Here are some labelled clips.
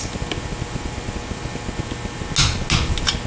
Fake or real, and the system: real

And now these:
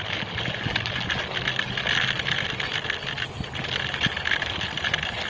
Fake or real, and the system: real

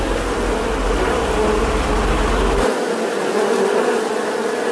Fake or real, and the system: real